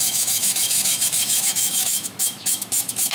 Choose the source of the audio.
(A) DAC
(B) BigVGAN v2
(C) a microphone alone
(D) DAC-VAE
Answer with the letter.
D